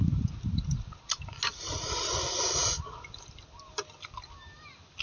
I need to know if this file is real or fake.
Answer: real